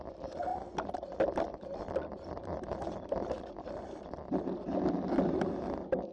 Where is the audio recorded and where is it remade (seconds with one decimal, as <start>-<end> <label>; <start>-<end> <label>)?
0.0-6.1 recorded